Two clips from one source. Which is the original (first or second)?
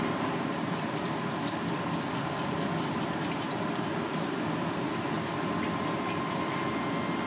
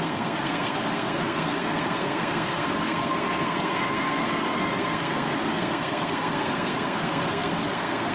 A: first